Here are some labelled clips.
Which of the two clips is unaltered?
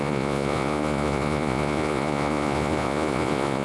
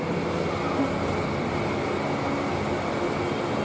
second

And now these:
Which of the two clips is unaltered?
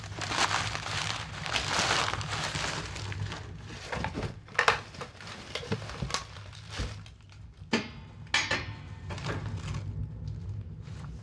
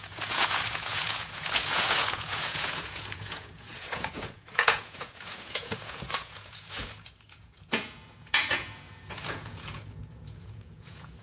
first